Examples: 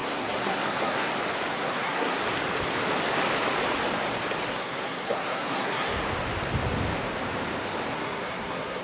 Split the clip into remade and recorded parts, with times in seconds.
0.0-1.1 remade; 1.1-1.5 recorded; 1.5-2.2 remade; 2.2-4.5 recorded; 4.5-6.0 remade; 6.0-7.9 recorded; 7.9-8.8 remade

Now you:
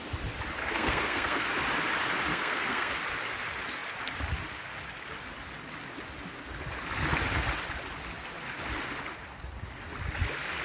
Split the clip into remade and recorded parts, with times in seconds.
0.0-0.6 recorded; 0.6-1.5 remade; 1.5-2.3 recorded; 2.3-2.9 remade; 2.9-10.6 recorded

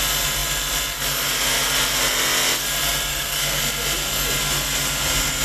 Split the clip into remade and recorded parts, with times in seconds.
0.0-3.1 recorded; 3.1-3.6 remade; 3.6-5.4 recorded

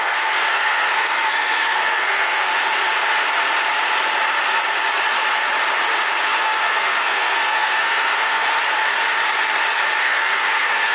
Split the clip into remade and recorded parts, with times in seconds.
0.0-2.5 remade; 2.5-6.2 recorded; 6.2-8.6 remade; 8.6-10.0 recorded; 10.0-10.9 remade

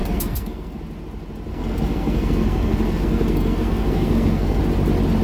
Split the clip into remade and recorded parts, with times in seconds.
0.0-0.8 remade; 0.8-1.5 recorded; 1.5-4.6 remade; 4.6-5.2 recorded